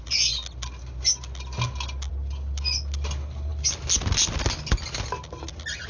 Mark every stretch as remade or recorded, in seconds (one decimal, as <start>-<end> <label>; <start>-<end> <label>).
0.0-5.9 recorded